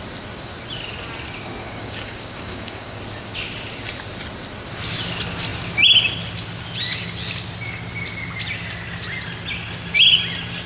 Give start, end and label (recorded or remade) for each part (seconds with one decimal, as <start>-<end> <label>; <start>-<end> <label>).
0.0-1.6 recorded; 1.6-3.0 remade; 3.0-10.7 recorded